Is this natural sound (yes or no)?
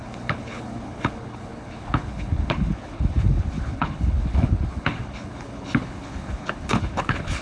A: no